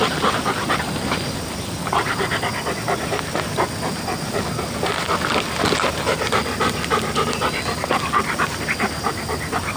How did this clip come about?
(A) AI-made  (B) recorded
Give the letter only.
B